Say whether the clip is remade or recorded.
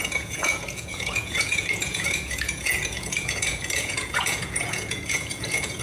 remade